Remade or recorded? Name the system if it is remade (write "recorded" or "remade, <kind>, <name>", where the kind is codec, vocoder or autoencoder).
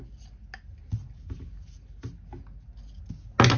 recorded